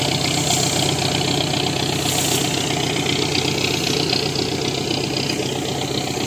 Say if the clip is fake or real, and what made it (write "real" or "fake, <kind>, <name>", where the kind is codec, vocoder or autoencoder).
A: real